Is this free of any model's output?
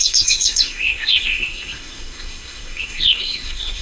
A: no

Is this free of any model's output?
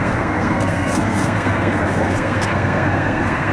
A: no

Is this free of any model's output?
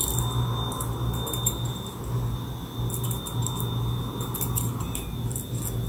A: yes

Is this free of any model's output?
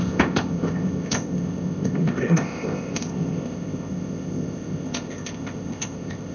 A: no